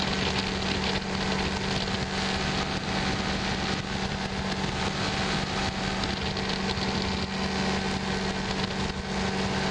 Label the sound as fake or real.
real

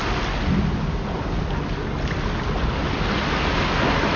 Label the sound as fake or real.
real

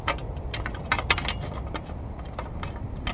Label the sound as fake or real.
real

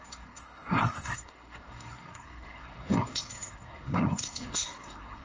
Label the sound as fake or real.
fake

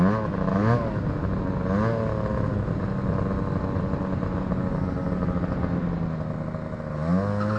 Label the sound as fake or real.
real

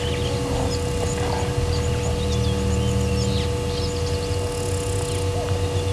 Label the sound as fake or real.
real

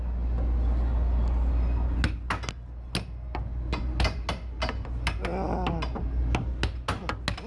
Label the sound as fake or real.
real